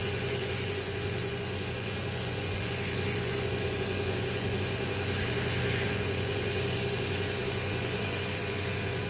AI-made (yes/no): yes